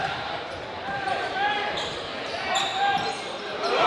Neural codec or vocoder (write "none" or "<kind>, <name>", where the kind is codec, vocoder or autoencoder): vocoder, BigVGAN v2